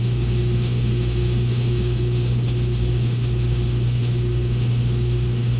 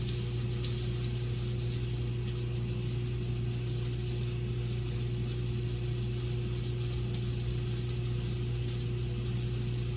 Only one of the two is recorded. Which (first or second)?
second